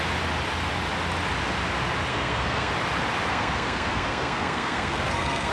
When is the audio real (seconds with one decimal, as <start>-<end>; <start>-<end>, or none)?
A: 0.0-2.1; 2.7-3.3